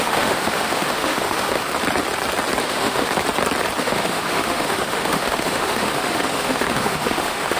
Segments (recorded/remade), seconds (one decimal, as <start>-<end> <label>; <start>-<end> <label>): 0.0-1.7 remade; 1.7-2.6 recorded; 2.6-3.1 remade; 3.1-3.8 recorded; 3.8-7.6 remade